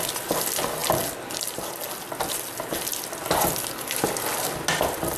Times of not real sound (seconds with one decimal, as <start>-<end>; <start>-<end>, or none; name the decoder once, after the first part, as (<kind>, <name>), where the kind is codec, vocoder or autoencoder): none